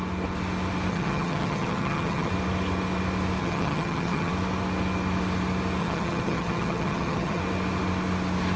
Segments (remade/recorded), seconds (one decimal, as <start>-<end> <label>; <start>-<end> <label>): 0.0-0.9 recorded; 0.9-2.3 remade; 2.3-3.4 recorded; 3.4-4.3 remade; 4.3-5.8 recorded; 5.8-7.4 remade; 7.4-8.6 recorded